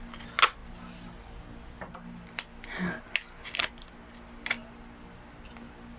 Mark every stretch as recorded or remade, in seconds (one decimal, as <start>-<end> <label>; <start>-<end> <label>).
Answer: 0.0-6.0 recorded